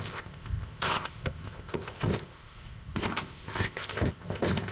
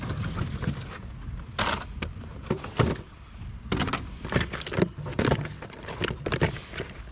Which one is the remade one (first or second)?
first